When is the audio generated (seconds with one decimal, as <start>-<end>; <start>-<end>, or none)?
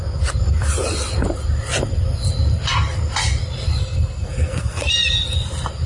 3.8-4.9